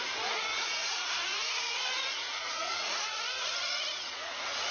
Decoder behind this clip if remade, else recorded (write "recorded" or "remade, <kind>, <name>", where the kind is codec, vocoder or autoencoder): remade, vocoder, Vocos